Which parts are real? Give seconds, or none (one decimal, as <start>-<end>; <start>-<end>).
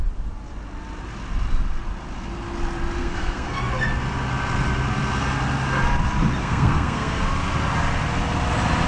0.0-3.0; 3.6-6.4; 7.2-8.9